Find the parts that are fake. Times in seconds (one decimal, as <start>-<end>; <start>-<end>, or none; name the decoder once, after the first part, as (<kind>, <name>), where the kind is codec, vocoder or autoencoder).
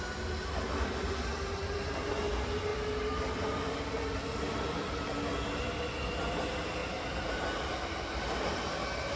none